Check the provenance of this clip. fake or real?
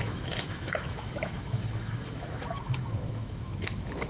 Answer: fake